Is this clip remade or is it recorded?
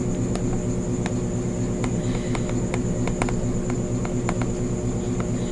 recorded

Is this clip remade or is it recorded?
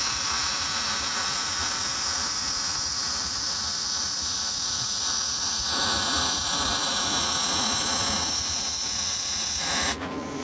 remade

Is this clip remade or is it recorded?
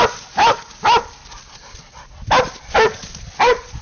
recorded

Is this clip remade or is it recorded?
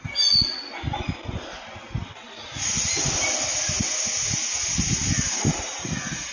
recorded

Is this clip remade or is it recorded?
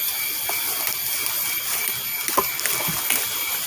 recorded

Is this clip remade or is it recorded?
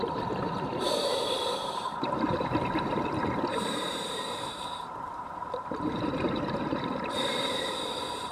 remade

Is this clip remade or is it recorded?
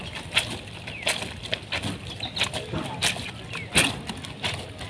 recorded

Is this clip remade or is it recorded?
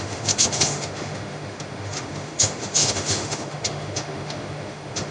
remade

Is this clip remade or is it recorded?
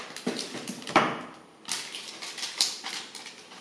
recorded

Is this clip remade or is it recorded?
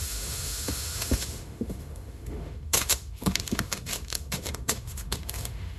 remade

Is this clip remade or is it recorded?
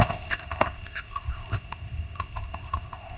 remade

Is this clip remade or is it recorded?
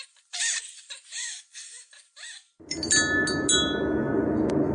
recorded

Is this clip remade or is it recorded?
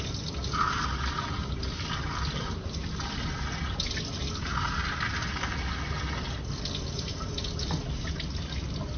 recorded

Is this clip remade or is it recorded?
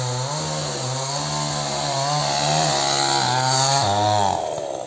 recorded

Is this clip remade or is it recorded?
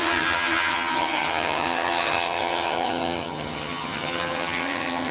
remade